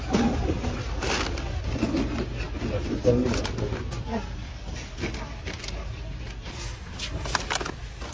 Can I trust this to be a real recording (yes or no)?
yes